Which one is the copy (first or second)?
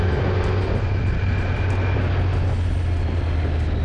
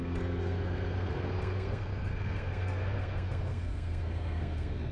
second